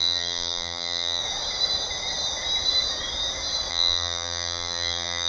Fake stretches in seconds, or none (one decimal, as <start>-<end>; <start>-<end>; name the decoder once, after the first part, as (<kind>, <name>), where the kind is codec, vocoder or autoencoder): 0.0-1.2 (vocoder, BigVGAN v2); 3.7-5.3